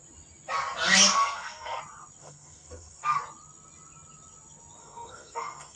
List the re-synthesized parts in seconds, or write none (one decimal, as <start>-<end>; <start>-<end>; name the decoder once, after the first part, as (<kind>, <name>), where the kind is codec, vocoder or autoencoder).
1.1-1.8 (codec, SNAC); 2.2-3.2; 4.8-5.8